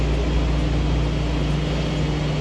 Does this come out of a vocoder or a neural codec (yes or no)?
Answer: no